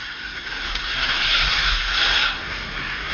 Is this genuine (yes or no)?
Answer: no